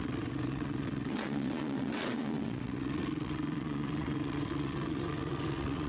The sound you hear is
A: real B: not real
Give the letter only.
B